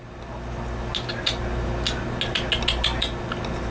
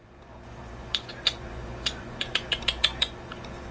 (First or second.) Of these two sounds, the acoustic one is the first